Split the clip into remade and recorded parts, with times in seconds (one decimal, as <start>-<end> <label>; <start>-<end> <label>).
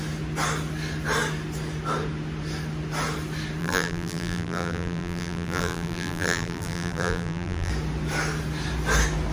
0.0-3.6 recorded; 3.6-7.7 remade; 7.7-9.3 recorded